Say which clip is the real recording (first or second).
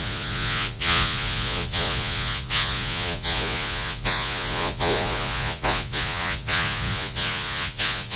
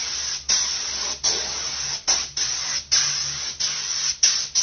second